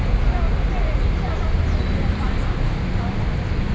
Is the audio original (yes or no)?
yes